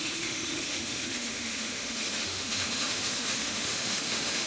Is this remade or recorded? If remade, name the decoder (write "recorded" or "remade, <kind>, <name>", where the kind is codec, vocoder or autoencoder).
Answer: remade, autoencoder, DAC-VAE